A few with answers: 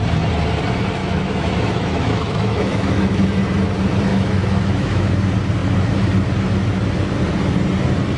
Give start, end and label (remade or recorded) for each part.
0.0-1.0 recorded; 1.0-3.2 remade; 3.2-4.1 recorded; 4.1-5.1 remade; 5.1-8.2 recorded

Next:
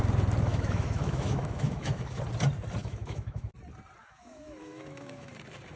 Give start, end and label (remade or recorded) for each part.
0.0-0.5 recorded; 0.5-2.2 remade; 2.2-2.8 recorded; 2.8-3.5 remade; 3.5-4.0 recorded; 4.0-5.3 remade; 5.3-5.8 recorded

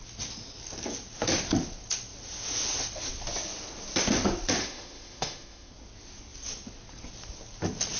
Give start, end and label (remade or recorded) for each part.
0.0-4.6 recorded; 4.6-5.7 remade; 5.7-8.0 recorded

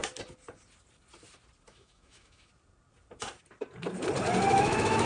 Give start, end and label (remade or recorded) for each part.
0.0-1.7 recorded; 1.7-2.5 remade; 2.5-4.5 recorded; 4.5-5.1 remade

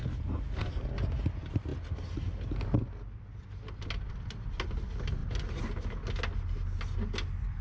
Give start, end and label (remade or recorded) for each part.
0.0-7.6 recorded

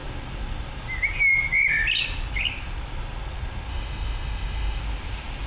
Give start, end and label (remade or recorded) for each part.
0.0-3.7 recorded; 3.7-4.8 remade; 4.8-5.5 recorded

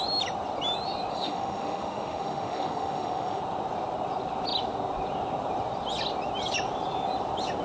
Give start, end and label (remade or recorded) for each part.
0.0-1.1 recorded; 1.1-3.4 remade; 3.4-7.6 recorded

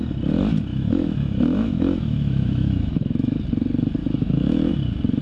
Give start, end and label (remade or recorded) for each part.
0.0-0.7 recorded; 0.7-3.4 remade; 3.4-4.0 recorded; 4.0-4.7 remade; 4.7-5.2 recorded